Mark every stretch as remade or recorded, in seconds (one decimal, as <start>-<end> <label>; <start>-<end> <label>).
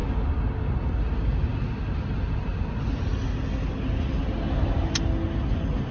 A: 0.0-5.9 recorded